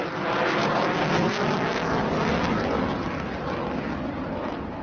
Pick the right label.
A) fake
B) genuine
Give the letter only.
B